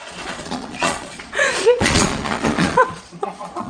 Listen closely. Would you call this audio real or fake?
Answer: fake